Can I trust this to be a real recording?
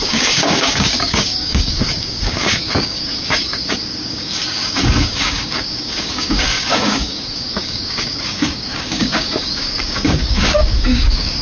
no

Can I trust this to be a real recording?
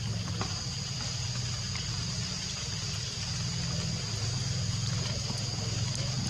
yes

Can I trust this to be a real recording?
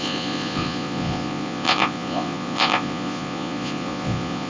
no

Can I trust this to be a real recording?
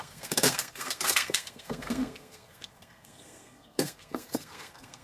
no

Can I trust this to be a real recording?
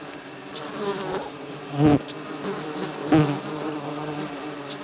yes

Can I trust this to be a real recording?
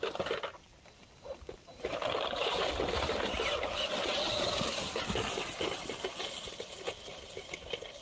yes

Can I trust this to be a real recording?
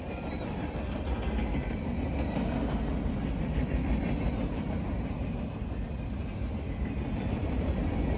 yes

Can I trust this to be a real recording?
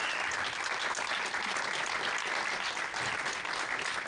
yes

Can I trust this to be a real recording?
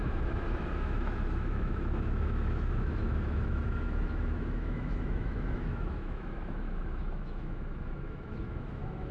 no